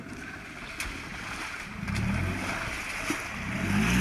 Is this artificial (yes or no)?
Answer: no